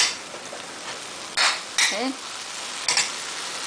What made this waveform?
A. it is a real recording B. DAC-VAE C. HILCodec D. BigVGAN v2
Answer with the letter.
A